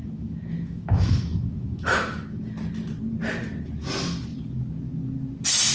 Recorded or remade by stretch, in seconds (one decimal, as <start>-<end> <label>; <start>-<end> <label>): 0.0-2.4 remade; 2.4-5.7 recorded